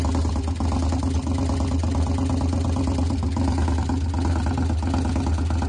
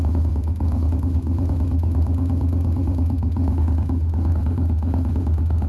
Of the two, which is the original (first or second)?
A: first